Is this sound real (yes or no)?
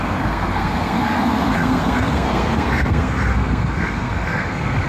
no